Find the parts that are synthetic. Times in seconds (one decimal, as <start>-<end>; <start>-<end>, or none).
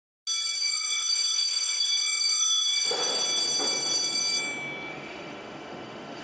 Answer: 0.6-3.0; 4.9-6.2